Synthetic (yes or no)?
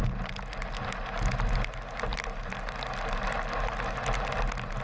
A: no